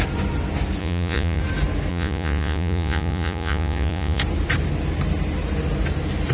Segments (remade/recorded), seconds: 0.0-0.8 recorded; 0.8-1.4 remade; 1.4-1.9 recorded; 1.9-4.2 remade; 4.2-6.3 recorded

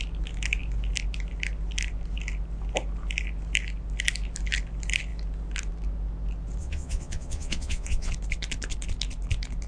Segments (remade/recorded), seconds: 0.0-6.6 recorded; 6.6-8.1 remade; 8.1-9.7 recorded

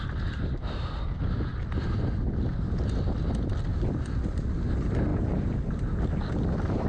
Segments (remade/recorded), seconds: 0.0-5.1 recorded; 5.1-6.0 remade; 6.0-6.9 recorded